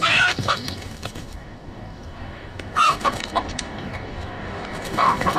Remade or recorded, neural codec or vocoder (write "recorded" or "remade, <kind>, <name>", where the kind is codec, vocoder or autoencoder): remade, codec, DAC